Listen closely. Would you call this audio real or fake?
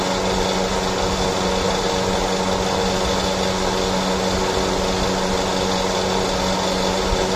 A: real